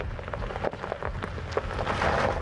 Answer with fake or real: real